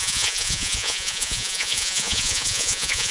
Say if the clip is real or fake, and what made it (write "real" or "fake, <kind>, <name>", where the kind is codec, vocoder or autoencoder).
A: fake, vocoder, Vocos